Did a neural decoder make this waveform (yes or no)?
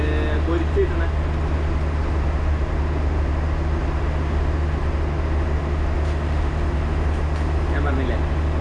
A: no